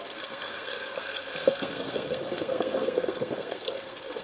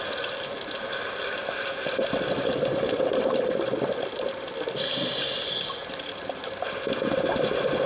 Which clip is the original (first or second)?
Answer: second